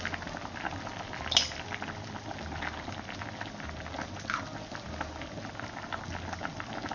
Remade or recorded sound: recorded